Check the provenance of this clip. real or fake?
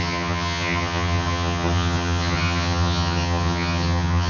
fake